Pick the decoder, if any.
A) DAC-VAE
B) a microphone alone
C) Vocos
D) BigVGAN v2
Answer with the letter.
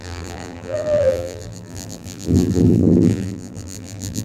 D